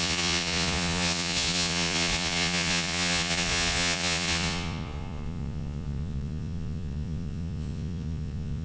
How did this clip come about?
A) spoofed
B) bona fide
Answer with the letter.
A